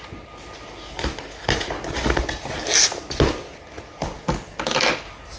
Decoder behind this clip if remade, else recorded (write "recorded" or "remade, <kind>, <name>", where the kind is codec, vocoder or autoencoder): recorded